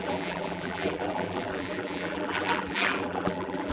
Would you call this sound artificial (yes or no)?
yes